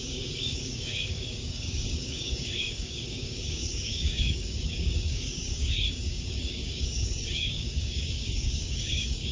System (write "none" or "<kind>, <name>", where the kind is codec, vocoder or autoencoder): codec, DAC